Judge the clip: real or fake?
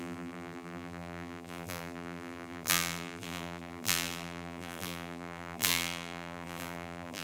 fake